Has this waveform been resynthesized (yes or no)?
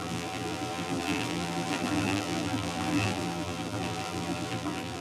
yes